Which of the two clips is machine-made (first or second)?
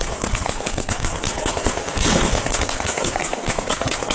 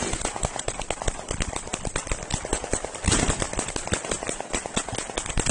first